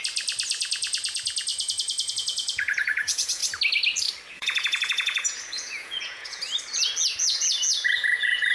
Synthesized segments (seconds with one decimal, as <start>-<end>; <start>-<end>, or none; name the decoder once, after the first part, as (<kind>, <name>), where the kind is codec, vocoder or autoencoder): 0.6-3.4 (vocoder, Vocos); 4.3-6.4; 7.2-8.5